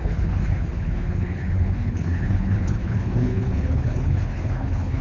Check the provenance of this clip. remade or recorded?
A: remade